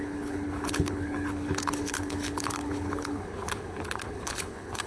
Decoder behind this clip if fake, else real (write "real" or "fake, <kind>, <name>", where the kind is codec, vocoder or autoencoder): fake, codec, HILCodec